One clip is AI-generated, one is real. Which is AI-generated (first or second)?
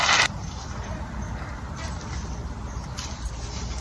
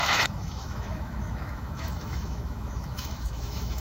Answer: second